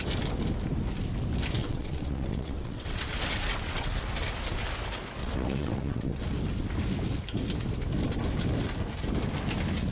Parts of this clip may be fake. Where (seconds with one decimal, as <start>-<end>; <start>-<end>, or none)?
1.6-4.0; 5.2-6.2